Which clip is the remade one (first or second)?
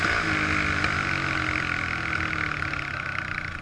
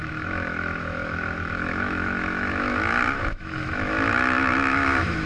second